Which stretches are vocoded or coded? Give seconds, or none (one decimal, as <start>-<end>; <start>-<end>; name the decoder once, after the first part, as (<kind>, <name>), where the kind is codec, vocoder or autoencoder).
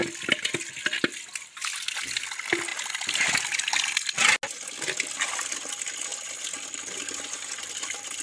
none